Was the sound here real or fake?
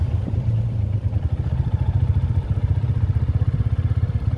fake